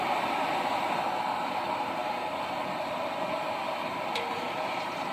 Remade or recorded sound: remade